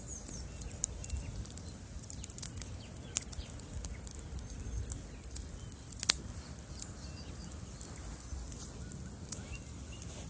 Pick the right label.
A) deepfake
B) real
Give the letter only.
B